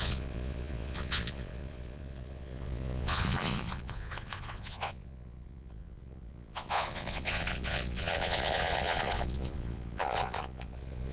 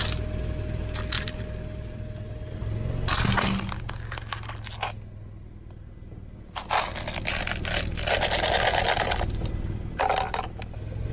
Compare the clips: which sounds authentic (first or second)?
second